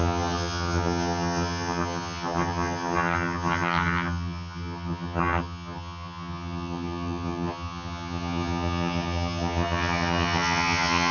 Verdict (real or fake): fake